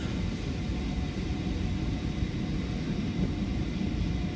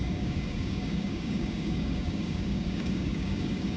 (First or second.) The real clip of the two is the first